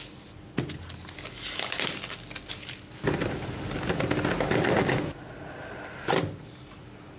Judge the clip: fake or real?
real